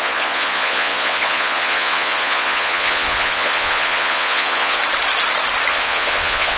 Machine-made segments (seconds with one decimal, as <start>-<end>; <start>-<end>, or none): 0.0-4.8; 5.7-6.6